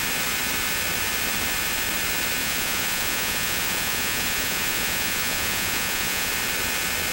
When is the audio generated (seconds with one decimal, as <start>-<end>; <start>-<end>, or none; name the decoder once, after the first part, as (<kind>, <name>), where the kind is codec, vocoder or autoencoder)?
2.4-6.3 (vocoder, Vocos)